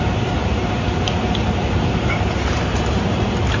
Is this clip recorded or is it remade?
remade